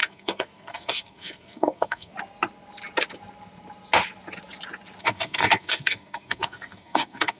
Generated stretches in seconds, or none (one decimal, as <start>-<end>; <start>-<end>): 0.0-2.1; 5.0-7.4